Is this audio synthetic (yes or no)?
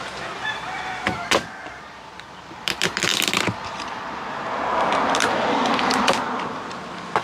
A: yes